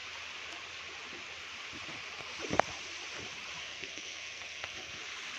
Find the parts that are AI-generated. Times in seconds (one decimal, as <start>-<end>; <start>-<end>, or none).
3.6-5.0